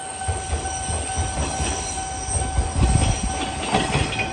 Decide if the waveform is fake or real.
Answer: real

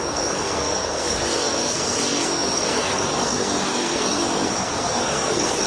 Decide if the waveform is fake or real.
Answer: fake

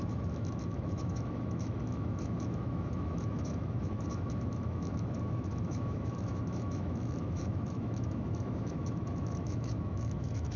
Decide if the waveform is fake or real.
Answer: fake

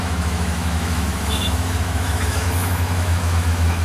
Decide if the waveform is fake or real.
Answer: fake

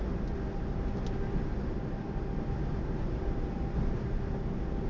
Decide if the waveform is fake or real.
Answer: real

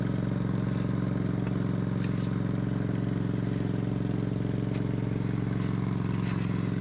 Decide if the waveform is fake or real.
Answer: real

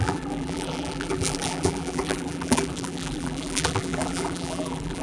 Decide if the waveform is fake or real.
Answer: fake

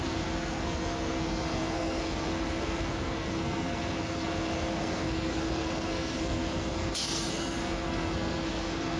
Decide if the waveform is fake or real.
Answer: fake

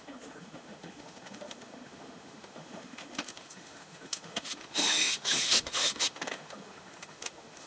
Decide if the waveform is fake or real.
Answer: fake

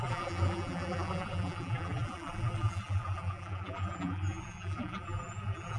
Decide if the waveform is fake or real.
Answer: fake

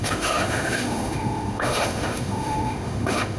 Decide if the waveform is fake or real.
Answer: fake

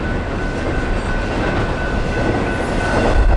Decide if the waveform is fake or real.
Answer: real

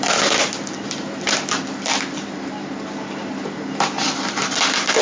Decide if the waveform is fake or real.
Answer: real